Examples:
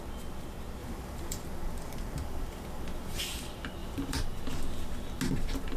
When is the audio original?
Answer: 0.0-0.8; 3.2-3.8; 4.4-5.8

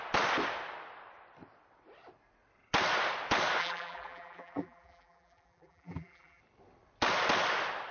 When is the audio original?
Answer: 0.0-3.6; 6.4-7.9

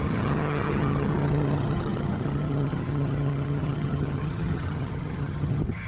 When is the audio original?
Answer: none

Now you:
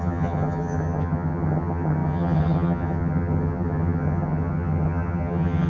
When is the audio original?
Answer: none

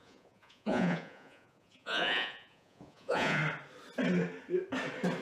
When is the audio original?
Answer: 3.4-5.2